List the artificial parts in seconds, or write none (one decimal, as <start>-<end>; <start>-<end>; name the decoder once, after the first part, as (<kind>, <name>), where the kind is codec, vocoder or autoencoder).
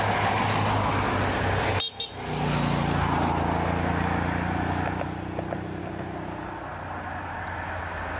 none